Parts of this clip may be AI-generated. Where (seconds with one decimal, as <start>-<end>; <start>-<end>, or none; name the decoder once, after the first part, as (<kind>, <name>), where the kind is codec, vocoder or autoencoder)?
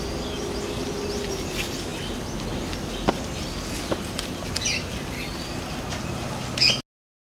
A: none